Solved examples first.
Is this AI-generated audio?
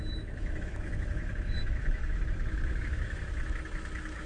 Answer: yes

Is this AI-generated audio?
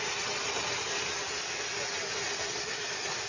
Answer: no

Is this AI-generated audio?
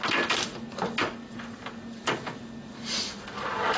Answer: no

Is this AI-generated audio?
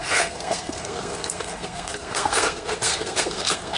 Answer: yes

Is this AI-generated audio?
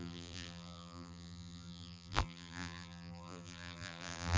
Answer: yes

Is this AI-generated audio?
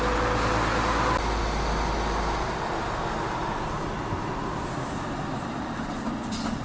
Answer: no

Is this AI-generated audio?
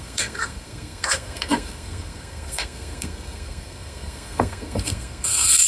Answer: yes